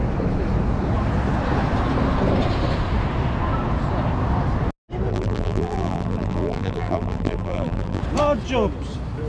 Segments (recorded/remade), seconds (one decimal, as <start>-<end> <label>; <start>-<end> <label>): 0.0-5.1 recorded; 5.1-8.0 remade; 8.0-9.3 recorded